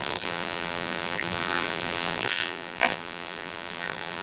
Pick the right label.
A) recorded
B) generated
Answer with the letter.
B